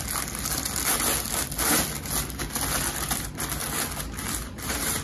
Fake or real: real